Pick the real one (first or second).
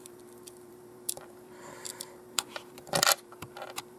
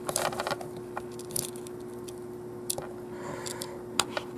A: second